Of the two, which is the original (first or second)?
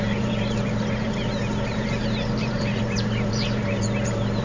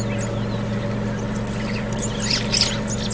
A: second